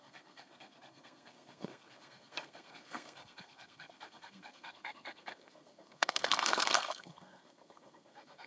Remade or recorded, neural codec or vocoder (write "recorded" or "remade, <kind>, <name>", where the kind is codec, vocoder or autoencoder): remade, codec, SNAC